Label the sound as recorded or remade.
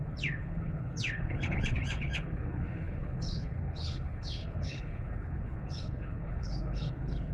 remade